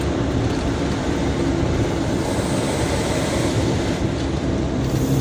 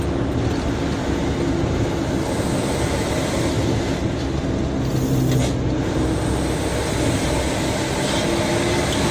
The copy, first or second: first